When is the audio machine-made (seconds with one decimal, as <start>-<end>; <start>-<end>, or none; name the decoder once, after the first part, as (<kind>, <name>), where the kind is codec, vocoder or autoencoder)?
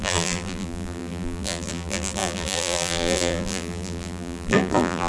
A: 0.0-5.1 (vocoder, BigVGAN v2)